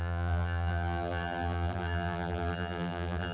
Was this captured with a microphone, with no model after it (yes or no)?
no